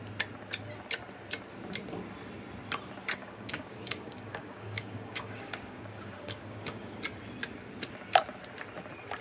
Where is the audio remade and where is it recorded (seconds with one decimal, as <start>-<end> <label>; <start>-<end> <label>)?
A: 0.0-3.2 recorded; 3.2-7.0 remade; 7.0-9.2 recorded